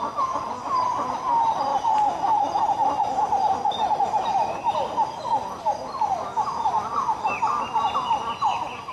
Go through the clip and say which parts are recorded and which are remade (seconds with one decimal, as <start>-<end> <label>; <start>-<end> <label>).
0.0-8.9 recorded